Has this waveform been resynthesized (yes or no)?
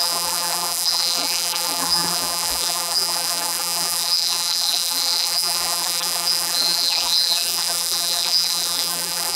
yes